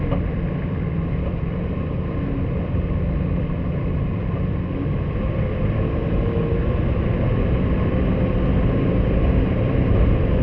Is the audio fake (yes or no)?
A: no